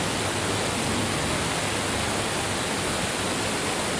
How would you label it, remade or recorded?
recorded